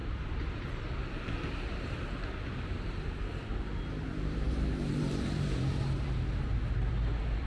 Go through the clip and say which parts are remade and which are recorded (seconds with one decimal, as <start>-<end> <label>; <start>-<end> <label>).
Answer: 0.0-3.2 remade; 3.2-4.1 recorded; 4.1-6.9 remade; 6.9-7.5 recorded